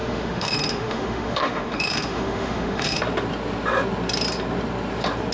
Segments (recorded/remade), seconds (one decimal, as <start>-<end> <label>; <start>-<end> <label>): 0.0-3.0 remade; 3.0-5.3 recorded